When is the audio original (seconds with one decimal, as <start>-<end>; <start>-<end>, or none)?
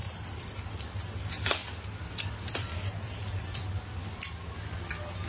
1.1-1.6; 4.6-5.3